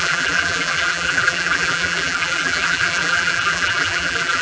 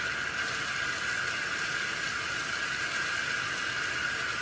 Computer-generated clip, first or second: first